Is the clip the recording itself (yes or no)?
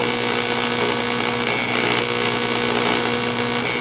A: yes